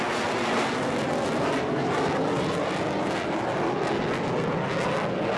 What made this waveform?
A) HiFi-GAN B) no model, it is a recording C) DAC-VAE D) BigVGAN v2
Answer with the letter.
B